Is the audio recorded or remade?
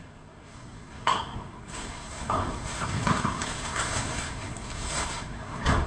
remade